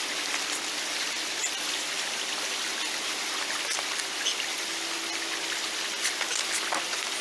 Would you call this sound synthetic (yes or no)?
no